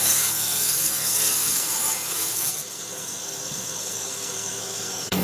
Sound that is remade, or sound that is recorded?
remade